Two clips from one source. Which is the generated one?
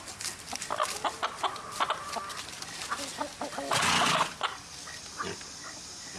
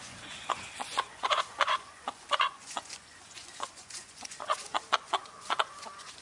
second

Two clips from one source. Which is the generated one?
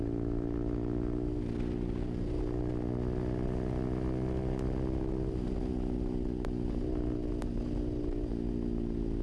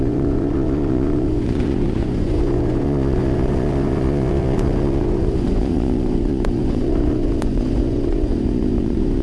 second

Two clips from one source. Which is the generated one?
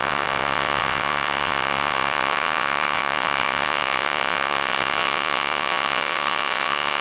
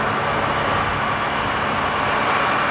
first